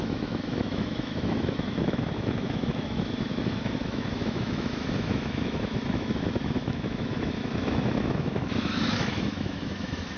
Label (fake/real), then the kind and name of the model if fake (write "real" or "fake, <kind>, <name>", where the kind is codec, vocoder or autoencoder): fake, autoencoder, DAC-VAE